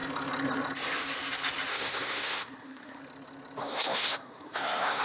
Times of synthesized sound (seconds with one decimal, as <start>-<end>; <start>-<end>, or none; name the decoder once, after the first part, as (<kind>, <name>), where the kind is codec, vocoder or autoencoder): 1.7-3.0 (codec, SNAC); 3.6-5.0